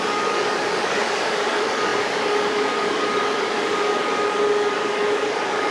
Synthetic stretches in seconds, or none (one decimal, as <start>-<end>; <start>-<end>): 0.0-5.7